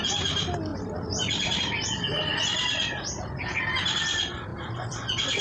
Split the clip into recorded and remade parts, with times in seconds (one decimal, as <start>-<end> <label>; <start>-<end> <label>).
0.0-0.7 recorded; 0.7-1.6 remade; 1.6-4.5 recorded; 4.5-5.4 remade